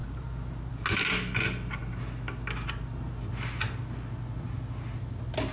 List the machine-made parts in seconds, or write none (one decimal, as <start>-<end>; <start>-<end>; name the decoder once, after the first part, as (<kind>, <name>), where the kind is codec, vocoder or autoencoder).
0.0-0.7 (vocoder, BigVGAN v2)